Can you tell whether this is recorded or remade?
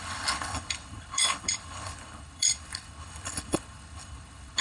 remade